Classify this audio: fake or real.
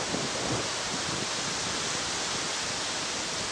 real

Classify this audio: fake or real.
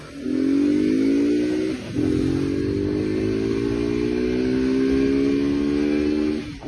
real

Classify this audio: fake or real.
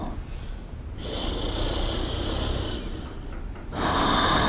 real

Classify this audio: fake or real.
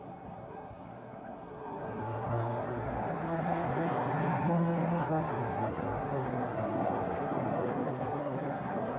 fake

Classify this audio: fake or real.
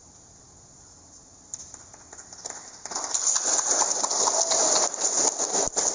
real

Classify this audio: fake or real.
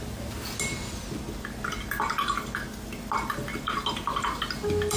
real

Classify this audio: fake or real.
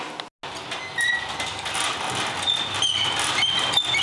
real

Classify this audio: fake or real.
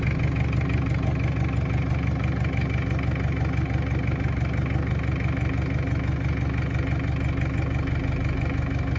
real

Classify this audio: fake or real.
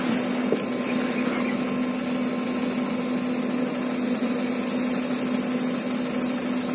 real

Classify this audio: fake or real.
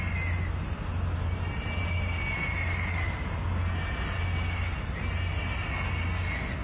real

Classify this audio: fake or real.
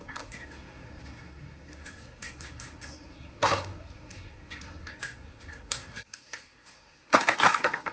fake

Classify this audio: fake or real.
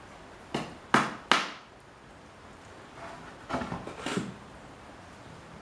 real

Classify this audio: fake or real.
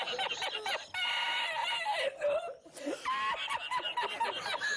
real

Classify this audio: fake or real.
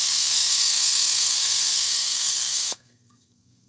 fake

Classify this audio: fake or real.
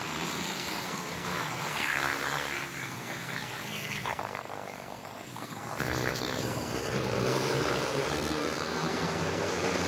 fake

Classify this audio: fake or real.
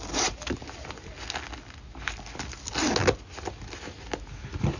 real